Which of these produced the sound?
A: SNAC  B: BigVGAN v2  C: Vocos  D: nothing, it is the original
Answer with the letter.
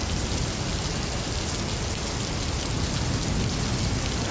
D